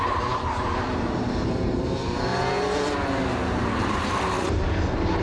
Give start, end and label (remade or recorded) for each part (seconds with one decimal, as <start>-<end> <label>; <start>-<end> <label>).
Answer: 0.0-2.3 remade; 2.3-4.5 recorded; 4.5-5.2 remade